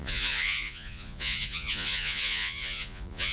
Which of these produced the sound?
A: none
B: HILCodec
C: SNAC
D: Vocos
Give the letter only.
D